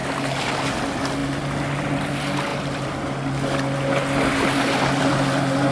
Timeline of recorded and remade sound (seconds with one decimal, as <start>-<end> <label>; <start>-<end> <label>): 0.0-5.7 recorded